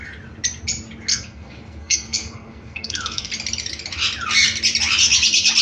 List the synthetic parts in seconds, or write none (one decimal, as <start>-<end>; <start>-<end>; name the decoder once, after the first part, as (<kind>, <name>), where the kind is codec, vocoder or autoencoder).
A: 1.1-3.3 (codec, SNAC)